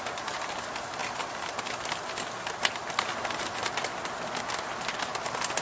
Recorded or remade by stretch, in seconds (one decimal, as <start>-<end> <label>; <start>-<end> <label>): 0.0-5.6 recorded